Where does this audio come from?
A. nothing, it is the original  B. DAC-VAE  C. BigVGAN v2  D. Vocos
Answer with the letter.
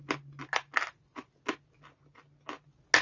A